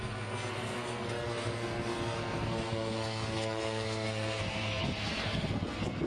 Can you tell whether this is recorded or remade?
remade